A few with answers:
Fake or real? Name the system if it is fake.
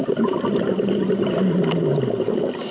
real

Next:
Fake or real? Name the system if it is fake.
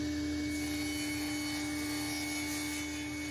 real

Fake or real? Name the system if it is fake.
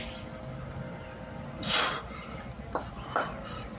real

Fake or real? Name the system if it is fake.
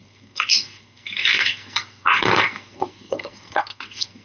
fake, codec, SNAC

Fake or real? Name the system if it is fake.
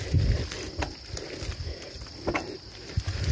real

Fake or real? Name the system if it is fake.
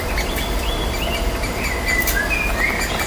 real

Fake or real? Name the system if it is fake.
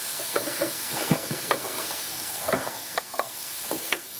fake, codec, SNAC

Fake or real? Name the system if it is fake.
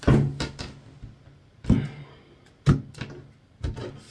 real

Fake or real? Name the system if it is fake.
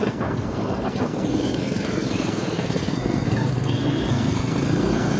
fake, codec, SNAC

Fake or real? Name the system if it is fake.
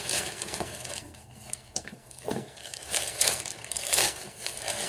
fake, codec, SNAC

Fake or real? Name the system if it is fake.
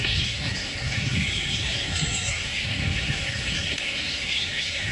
fake, codec, SNAC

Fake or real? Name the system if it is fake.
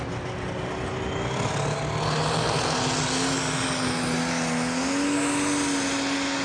real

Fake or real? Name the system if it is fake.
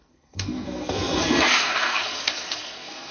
fake, codec, SNAC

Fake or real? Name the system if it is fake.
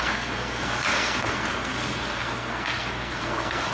fake, codec, SNAC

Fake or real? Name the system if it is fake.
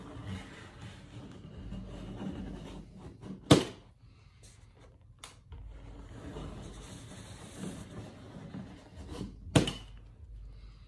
real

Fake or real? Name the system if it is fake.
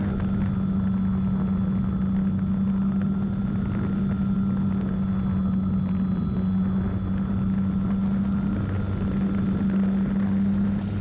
real